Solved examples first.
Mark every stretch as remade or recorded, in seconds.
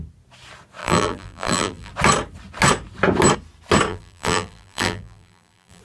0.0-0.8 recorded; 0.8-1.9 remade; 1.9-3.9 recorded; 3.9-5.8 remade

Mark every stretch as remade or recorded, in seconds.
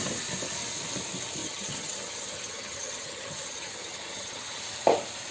0.0-1.4 recorded; 1.4-4.6 remade; 4.6-5.3 recorded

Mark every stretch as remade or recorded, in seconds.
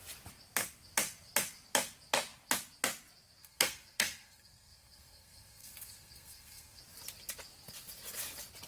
0.0-3.4 recorded; 3.4-6.8 remade; 6.8-8.7 recorded